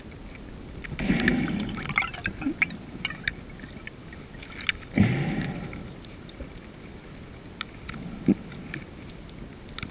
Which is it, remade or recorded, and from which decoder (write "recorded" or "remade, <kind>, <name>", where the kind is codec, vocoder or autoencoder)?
recorded